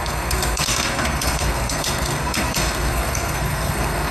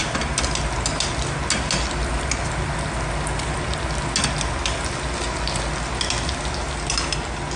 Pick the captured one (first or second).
second